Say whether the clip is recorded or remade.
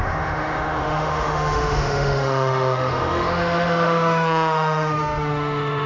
remade